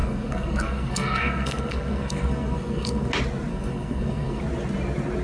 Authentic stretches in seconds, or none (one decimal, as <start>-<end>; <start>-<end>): 3.1-3.5; 4.4-5.2